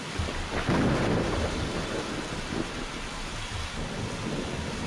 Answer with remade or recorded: recorded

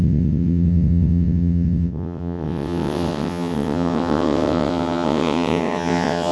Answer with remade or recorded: remade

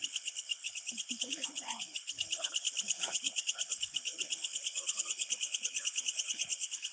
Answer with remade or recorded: remade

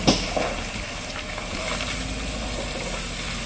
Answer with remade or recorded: recorded